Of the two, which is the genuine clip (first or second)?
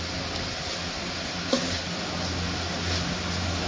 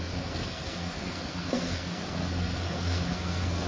first